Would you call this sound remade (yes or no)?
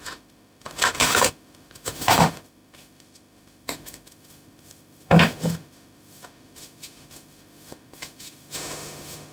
yes